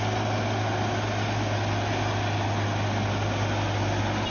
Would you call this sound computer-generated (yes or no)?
no